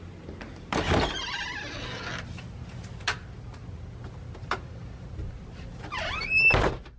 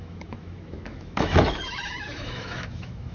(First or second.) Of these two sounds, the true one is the first